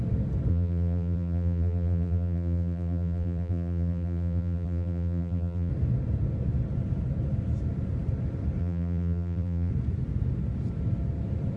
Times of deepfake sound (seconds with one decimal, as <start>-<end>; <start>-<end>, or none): 0.5-5.7; 8.6-9.7